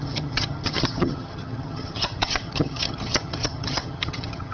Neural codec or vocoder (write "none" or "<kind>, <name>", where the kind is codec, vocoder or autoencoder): vocoder, HiFi-GAN